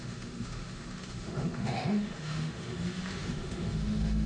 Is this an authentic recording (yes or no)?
no